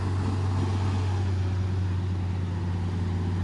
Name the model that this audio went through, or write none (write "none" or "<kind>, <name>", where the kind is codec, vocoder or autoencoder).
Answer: none